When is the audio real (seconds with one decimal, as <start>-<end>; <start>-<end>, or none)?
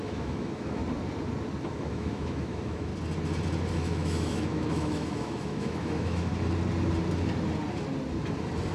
0.8-1.6; 2.9-3.7; 6.3-8.7